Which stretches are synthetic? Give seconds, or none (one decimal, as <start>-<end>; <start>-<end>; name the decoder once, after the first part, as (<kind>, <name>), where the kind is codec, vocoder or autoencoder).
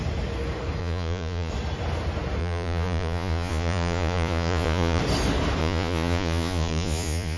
0.8-1.5 (vocoder, Vocos); 2.4-5.0; 5.6-7.4